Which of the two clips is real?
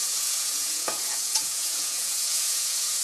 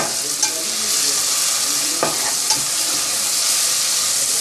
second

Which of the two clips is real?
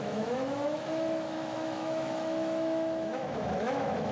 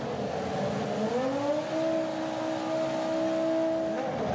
second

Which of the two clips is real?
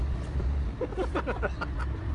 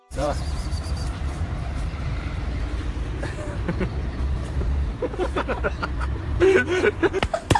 first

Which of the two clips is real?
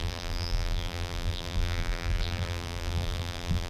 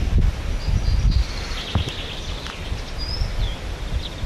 second